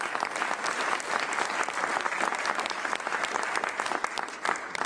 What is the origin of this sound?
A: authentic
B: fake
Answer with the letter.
A